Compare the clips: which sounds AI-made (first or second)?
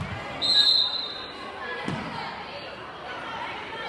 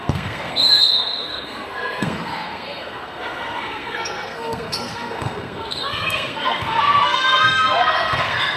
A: second